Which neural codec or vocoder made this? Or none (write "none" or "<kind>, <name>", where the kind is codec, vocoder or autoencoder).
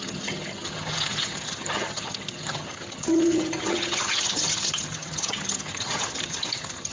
vocoder, HiFi-GAN